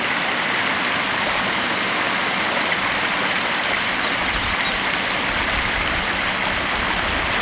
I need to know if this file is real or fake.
real